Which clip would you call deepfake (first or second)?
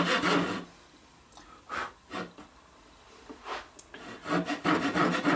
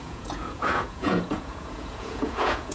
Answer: second